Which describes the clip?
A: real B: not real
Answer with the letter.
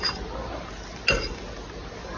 A